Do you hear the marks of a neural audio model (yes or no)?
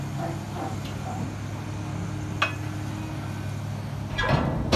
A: no